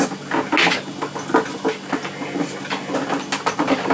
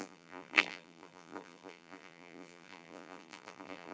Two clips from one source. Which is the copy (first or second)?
second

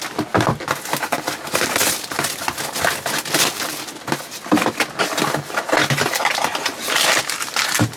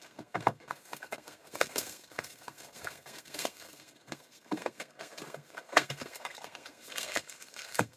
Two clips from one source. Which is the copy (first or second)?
second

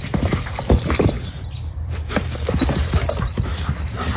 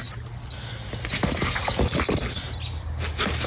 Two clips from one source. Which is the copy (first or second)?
first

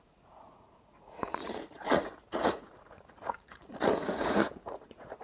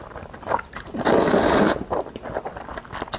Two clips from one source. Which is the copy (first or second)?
first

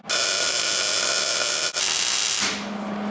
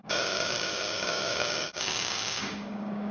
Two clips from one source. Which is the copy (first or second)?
second